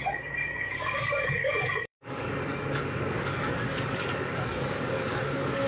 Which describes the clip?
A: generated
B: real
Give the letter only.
A